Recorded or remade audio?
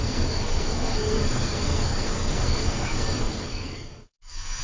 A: remade